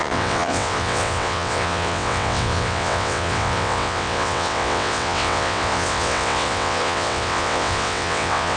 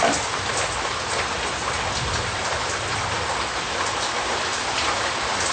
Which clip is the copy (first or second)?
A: first